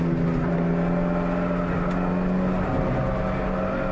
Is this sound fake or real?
real